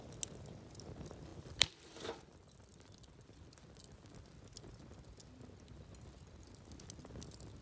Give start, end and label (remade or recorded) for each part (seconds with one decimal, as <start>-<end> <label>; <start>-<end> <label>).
0.0-1.3 recorded; 1.3-4.0 remade; 4.0-7.6 recorded